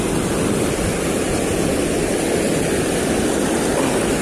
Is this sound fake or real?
real